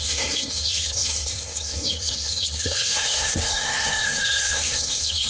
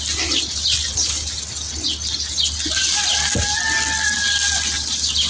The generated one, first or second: first